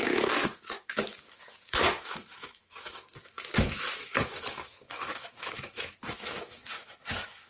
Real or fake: fake